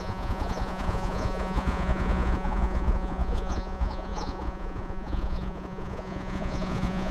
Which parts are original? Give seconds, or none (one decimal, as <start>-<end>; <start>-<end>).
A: none